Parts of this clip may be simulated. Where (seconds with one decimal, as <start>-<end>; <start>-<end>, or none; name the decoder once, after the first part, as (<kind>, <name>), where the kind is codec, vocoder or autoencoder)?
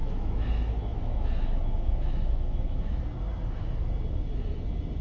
0.0-3.0 (autoencoder, DAC-VAE)